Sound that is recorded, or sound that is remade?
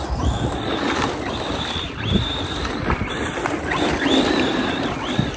recorded